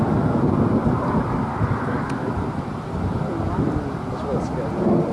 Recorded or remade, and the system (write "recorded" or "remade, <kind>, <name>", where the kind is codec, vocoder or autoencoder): recorded